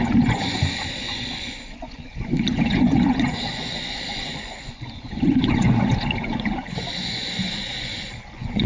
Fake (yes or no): yes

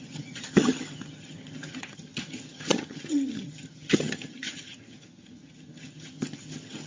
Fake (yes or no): yes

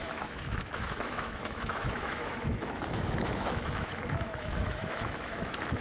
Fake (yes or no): yes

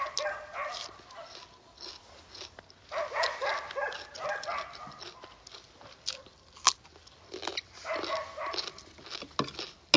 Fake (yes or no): no